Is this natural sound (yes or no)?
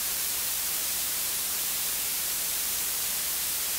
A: no